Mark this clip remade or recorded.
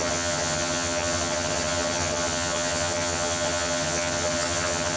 remade